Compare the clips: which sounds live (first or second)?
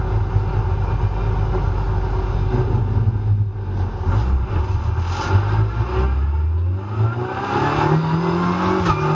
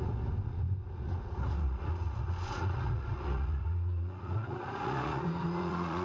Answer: first